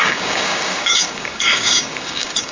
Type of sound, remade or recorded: remade